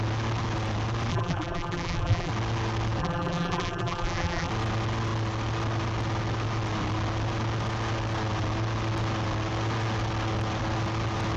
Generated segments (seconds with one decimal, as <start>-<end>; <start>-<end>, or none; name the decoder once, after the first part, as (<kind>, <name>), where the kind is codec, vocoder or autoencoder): 1.1-2.3 (vocoder, BigVGAN v2); 3.0-4.5

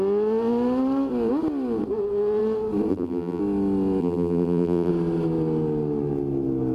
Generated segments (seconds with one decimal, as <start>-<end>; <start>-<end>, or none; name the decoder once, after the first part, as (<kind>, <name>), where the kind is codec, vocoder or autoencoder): 2.9-3.4 (vocoder, BigVGAN v2); 4.0-4.9

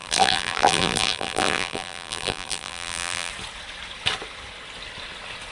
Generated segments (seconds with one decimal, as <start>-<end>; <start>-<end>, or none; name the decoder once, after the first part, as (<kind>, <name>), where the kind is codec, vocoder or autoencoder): 0.0-3.3 (vocoder, BigVGAN v2)

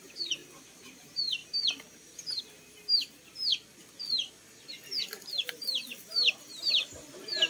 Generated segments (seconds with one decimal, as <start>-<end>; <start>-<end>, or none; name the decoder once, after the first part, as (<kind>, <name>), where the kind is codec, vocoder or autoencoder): 0.0-3.5 (vocoder, BigVGAN v2); 5.3-7.5

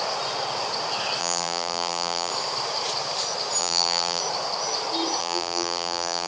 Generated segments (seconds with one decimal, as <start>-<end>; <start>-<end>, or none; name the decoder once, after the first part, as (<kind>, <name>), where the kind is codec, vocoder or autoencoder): 1.2-2.3 (vocoder, BigVGAN v2); 3.6-4.2; 5.2-6.3

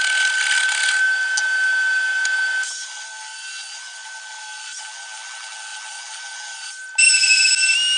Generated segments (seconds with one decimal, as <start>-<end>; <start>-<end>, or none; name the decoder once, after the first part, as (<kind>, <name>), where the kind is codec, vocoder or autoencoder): none